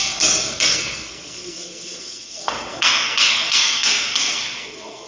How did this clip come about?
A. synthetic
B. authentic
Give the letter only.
A